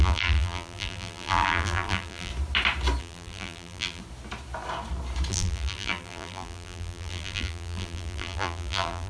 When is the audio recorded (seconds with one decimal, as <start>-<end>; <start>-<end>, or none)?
2.3-3.0; 4.0-5.3